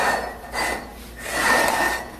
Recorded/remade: recorded